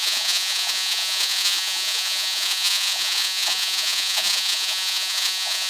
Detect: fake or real fake